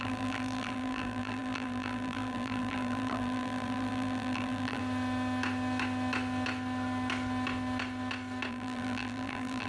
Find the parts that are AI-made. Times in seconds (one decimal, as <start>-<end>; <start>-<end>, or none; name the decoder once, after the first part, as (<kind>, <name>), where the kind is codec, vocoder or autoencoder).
0.0-4.8 (vocoder, BigVGAN v2); 8.5-9.7